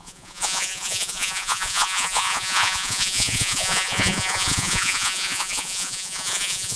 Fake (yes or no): yes